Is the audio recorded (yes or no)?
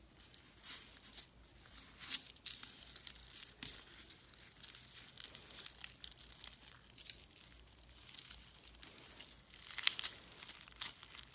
yes